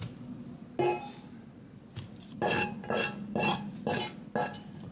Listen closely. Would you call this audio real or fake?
real